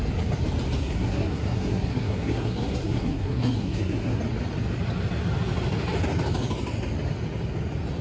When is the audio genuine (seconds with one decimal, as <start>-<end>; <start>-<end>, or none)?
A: 0.0-0.8; 4.2-8.0